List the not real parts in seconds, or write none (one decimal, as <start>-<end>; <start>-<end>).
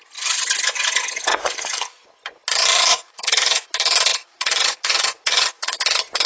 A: 1.3-2.1; 2.9-3.6; 4.1-5.8